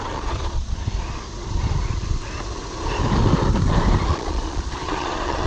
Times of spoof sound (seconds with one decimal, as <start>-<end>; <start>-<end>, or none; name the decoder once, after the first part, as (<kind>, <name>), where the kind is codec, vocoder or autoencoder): 0.0-0.8 (vocoder, Vocos); 4.1-5.5